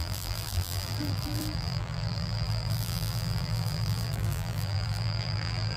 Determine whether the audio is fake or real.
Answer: fake